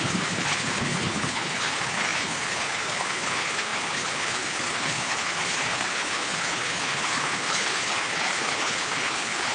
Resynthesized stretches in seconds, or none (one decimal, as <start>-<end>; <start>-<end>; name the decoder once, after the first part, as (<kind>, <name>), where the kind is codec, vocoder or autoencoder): 0.0-9.5 (codec, HILCodec)